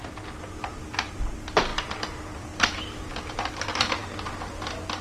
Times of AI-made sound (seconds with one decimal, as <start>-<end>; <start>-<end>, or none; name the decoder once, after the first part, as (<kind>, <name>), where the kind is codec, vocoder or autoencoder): none